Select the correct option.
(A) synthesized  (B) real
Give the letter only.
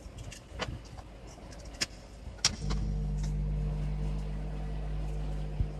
B